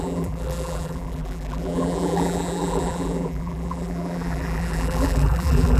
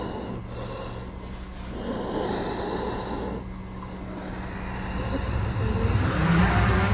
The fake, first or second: first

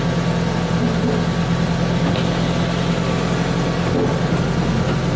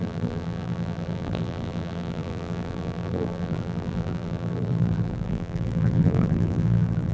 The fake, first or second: second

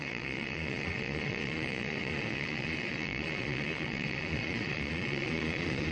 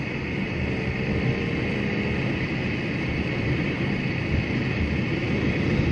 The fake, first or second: first